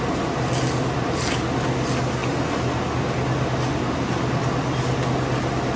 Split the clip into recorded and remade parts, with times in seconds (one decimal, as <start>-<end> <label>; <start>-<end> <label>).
0.0-5.8 recorded